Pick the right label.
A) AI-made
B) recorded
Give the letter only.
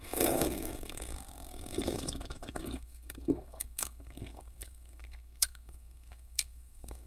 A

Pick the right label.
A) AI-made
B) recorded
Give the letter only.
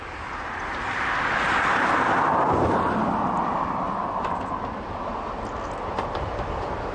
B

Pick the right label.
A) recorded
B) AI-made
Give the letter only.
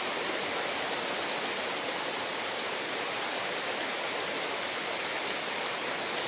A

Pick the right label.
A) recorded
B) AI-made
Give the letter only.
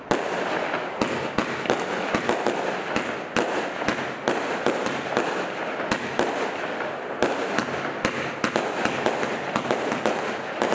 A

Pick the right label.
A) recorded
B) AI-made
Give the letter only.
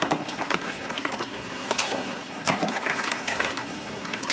B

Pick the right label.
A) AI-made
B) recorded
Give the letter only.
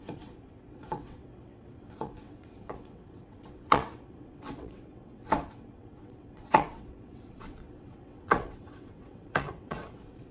A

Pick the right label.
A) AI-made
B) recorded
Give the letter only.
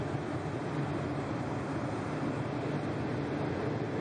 B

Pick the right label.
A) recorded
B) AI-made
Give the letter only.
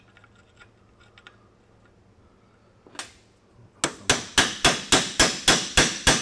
A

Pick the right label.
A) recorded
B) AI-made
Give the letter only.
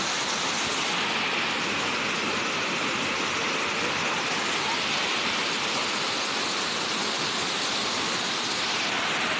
A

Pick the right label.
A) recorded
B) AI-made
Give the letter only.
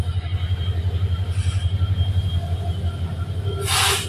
A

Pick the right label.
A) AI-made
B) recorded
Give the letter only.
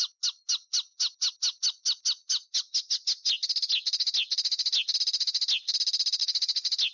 B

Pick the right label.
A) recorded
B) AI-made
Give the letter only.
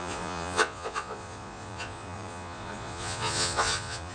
B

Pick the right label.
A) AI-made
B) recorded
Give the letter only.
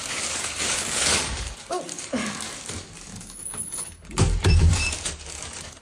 A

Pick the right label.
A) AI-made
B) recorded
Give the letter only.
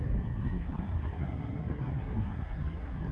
A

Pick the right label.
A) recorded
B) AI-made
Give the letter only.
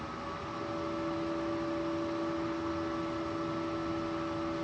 A